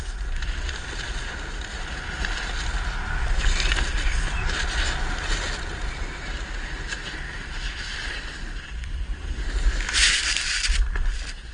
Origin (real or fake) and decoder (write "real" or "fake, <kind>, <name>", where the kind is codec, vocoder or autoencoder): real